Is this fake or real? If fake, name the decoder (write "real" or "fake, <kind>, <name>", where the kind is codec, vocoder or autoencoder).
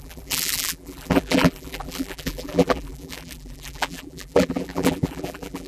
fake, vocoder, BigVGAN v2